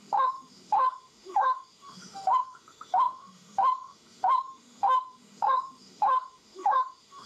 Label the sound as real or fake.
fake